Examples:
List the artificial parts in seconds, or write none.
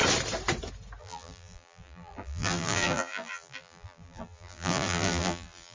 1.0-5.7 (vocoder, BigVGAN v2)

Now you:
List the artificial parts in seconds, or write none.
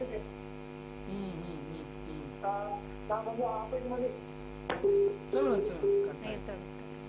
none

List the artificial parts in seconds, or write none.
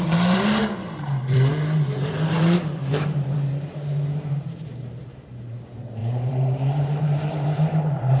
0.0-8.2 (vocoder, BigVGAN v2)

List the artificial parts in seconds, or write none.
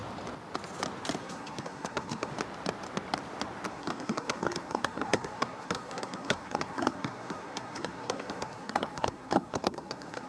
1.2-2.3 (codec, SNAC); 3.7-10.3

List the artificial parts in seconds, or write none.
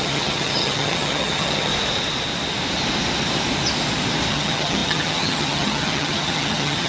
0.0-1.7 (vocoder, HiFi-GAN); 4.3-6.9